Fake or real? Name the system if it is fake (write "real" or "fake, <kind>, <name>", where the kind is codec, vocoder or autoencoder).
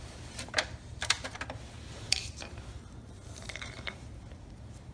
fake, vocoder, BigVGAN v2